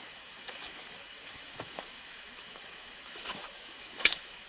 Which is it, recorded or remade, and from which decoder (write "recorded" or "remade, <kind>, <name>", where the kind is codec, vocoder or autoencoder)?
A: remade, autoencoder, DAC-VAE